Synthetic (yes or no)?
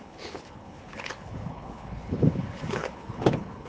yes